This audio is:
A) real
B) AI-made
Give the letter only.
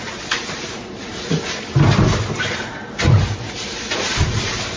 B